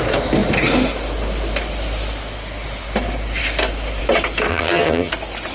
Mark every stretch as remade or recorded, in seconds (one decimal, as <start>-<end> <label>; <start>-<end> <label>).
0.0-4.5 recorded; 4.5-5.1 remade; 5.1-5.5 recorded